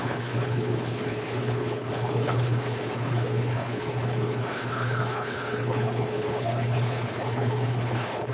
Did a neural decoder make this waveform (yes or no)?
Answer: yes